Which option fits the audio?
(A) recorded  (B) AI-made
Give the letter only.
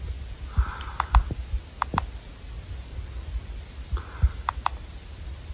A